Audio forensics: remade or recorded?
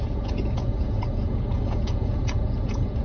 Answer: remade